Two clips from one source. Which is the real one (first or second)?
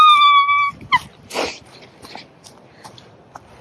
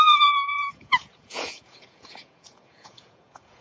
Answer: first